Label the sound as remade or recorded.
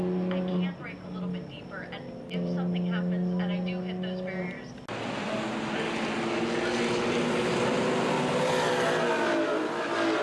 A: recorded